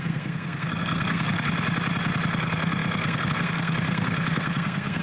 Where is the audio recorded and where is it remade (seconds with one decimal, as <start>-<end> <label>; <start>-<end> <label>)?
0.0-1.5 remade; 1.5-2.4 recorded; 2.4-5.0 remade